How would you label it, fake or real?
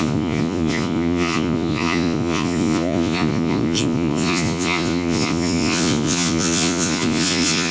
fake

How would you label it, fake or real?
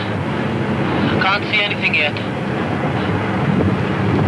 real